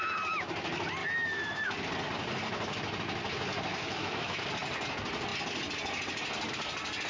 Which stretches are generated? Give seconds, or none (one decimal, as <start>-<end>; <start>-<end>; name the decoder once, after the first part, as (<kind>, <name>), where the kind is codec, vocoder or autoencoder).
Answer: 1.0-1.7 (autoencoder, DAC-VAE); 3.7-4.4